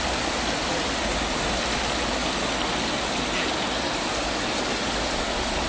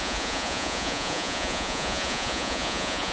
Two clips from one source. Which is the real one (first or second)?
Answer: first